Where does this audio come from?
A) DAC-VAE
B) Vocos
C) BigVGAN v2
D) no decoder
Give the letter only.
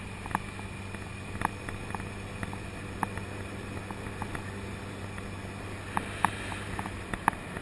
D